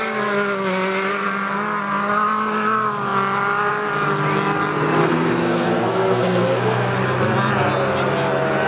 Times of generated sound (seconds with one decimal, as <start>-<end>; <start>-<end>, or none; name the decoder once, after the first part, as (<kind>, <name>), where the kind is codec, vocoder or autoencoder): 5.0-6.9 (codec, SNAC)